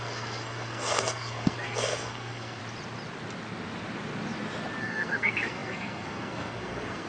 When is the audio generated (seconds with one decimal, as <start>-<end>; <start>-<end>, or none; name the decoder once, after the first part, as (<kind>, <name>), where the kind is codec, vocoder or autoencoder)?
0.0-2.6 (codec, SNAC); 4.8-7.1